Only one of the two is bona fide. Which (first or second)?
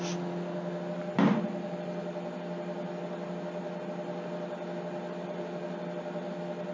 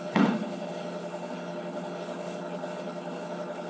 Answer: first